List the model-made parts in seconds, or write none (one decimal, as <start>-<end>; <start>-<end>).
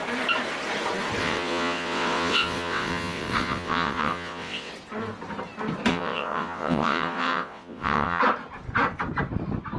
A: 1.2-4.7; 5.9-8.2